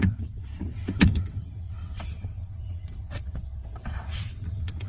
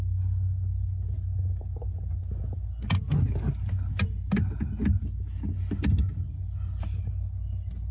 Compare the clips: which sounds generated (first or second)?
first